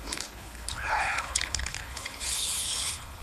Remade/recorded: remade